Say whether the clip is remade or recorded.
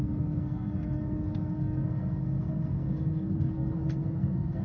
remade